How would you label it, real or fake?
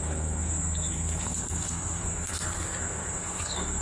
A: fake